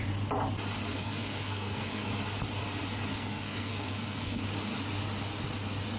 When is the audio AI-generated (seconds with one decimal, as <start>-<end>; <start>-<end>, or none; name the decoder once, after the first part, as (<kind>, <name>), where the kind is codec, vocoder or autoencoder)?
0.9-2.1 (codec, SNAC); 3.1-4.4